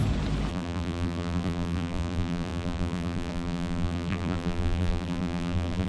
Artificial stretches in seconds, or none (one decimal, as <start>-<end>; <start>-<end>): 0.5-5.9